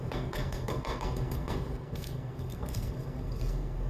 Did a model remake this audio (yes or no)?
yes